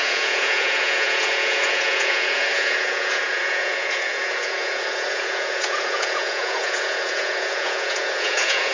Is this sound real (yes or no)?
no